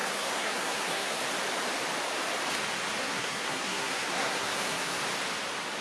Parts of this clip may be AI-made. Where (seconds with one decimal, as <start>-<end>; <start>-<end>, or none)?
0.0-1.2; 3.0-5.0